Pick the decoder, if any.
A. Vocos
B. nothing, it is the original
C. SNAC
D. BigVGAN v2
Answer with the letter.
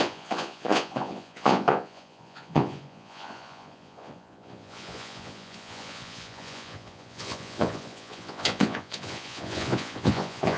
A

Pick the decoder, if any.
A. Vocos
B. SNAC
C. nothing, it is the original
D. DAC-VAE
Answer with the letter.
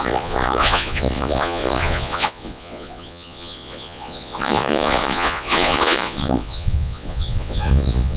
A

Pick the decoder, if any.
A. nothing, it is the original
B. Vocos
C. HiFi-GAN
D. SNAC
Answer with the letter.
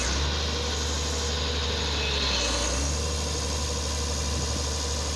A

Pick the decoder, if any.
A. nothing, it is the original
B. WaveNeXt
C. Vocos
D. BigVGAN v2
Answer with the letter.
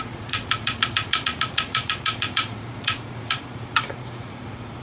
C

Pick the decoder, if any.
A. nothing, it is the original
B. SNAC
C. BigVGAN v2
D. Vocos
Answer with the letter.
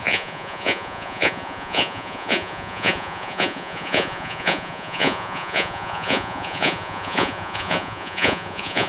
D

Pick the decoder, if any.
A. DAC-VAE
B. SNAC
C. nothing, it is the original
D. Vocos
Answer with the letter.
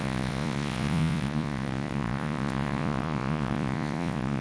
D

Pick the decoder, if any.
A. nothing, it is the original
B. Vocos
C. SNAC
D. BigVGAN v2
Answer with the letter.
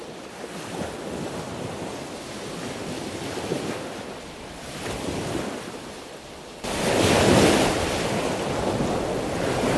A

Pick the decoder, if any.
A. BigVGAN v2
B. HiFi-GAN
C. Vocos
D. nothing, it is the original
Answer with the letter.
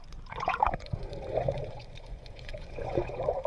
C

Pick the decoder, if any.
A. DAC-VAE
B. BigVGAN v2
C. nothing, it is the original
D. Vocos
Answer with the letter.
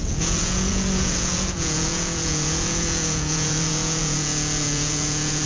D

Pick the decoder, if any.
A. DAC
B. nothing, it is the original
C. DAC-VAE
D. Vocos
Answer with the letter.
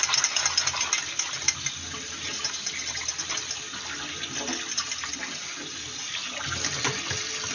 B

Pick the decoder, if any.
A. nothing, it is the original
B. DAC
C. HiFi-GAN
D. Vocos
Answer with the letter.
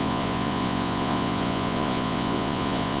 D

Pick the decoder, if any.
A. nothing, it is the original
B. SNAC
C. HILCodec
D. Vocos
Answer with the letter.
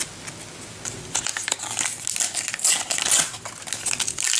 A